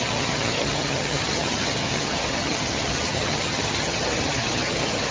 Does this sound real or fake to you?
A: fake